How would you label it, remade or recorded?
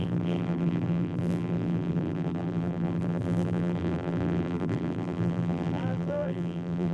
remade